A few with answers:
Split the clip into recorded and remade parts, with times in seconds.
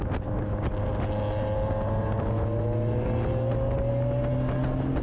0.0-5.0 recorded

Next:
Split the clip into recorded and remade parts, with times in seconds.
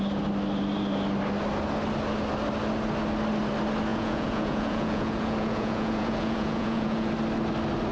0.0-3.9 recorded; 3.9-7.1 remade; 7.1-7.9 recorded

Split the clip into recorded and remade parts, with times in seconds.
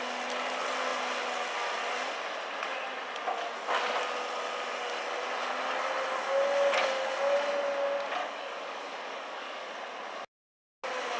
0.0-8.2 recorded; 8.2-9.7 remade; 9.7-11.2 recorded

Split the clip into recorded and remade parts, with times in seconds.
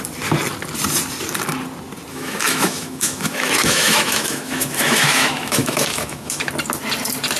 0.0-2.1 recorded; 2.1-6.5 remade; 6.5-7.4 recorded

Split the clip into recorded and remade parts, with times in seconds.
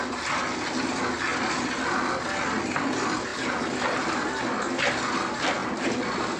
0.0-1.3 recorded; 1.3-2.0 remade; 2.0-3.3 recorded; 3.3-4.4 remade; 4.4-5.6 recorded; 5.6-6.4 remade